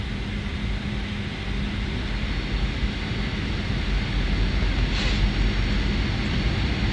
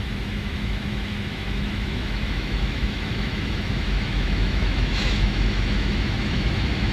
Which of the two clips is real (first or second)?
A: first